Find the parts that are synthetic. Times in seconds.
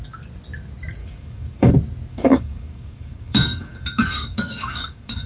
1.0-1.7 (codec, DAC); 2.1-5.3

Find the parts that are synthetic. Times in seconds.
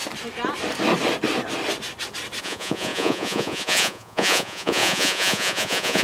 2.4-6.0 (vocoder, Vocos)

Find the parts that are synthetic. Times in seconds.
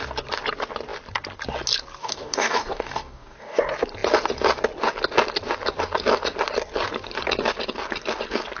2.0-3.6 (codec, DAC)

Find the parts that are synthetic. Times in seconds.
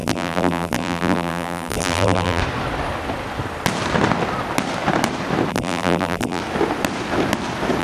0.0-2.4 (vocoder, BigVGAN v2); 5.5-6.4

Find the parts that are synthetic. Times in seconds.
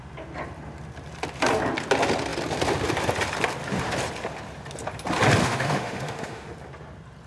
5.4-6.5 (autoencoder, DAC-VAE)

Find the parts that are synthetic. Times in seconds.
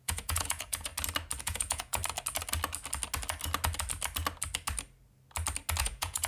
0.0-0.9 (vocoder, Vocos); 1.4-2.0; 5.8-6.3